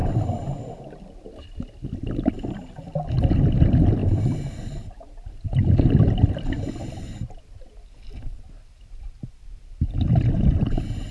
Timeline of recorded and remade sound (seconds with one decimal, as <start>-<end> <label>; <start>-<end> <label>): 0.0-11.1 recorded